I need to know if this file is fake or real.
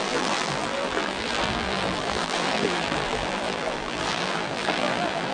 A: fake